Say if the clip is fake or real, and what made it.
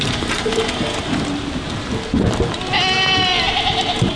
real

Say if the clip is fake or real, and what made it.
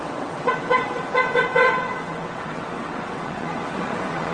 fake, vocoder, WaveNeXt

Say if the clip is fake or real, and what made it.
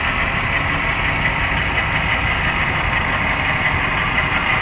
real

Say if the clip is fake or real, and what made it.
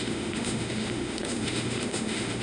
fake, autoencoder, DAC-VAE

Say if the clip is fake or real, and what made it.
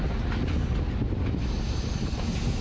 real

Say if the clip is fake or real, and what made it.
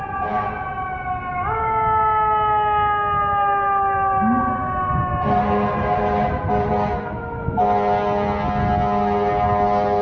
real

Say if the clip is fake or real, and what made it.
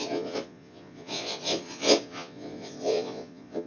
fake, vocoder, Vocos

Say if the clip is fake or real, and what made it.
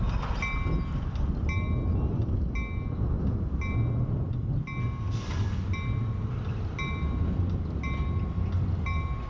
real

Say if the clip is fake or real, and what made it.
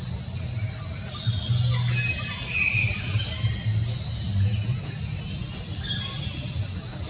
real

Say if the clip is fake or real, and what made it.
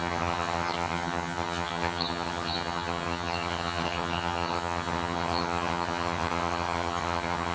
fake, vocoder, HiFi-GAN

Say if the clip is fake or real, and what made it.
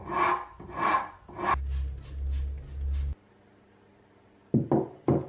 real